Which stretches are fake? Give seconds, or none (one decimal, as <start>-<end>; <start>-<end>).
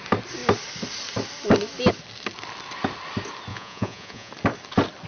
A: 3.5-4.3